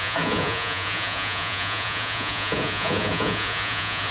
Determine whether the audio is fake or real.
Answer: fake